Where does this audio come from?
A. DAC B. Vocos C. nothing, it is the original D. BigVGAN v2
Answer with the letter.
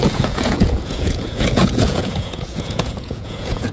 B